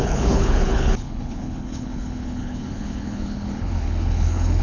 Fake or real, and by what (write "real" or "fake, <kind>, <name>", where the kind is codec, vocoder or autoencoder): fake, codec, HILCodec